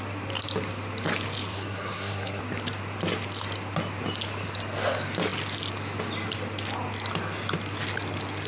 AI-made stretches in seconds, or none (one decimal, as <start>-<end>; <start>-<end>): 1.5-2.4